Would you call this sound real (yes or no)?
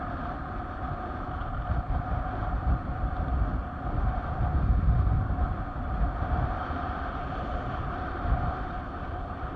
yes